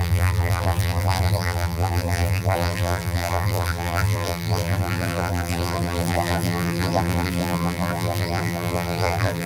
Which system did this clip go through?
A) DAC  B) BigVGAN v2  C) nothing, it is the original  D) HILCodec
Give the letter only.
B